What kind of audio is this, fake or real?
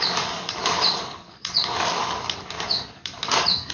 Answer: fake